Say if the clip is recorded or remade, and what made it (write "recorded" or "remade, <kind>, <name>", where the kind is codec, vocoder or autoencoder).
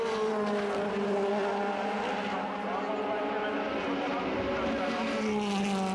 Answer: recorded